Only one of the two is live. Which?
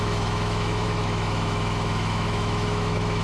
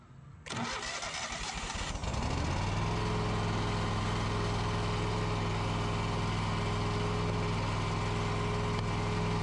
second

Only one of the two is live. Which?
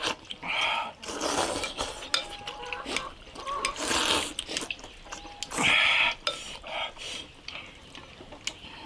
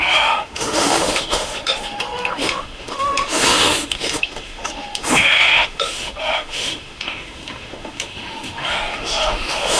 first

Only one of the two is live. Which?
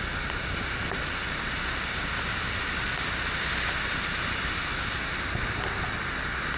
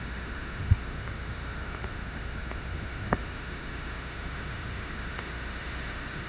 first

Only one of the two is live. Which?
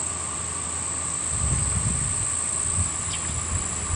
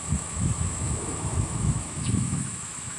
first